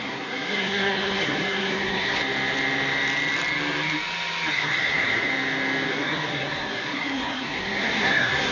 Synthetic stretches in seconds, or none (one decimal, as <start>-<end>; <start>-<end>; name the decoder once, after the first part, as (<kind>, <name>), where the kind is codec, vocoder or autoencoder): 0.0-2.2 (codec, SNAC); 4.5-5.3; 5.9-8.5